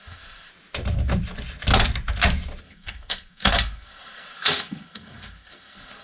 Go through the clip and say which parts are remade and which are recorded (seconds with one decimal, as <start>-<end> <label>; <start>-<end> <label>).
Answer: 0.0-0.5 remade; 0.5-2.6 recorded; 2.6-6.0 remade